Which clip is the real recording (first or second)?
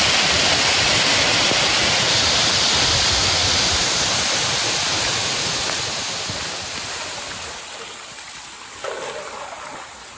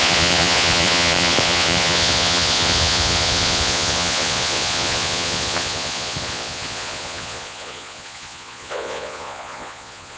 first